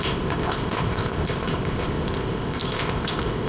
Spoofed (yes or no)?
yes